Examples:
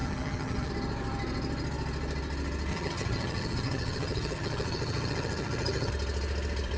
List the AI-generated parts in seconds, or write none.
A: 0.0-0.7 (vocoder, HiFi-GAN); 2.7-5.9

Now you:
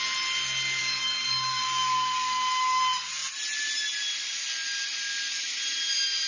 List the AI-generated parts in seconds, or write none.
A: 0.8-2.8 (codec, DAC)